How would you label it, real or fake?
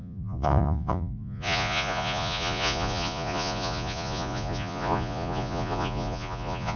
fake